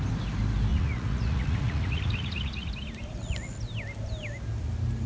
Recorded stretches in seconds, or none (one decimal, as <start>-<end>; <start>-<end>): 0.0-0.7; 2.7-5.1